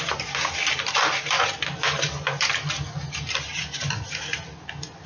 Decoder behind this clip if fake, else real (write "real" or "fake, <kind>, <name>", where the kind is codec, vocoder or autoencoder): real